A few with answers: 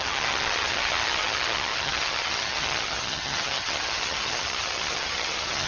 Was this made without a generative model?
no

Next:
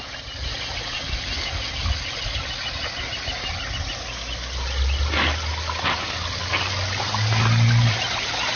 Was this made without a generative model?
yes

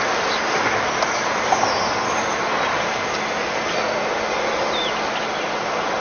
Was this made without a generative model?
yes